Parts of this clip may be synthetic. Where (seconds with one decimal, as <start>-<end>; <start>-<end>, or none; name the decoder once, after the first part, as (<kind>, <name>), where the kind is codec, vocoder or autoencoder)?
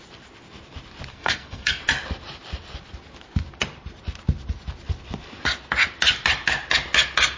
1.1-1.8 (codec, SNAC)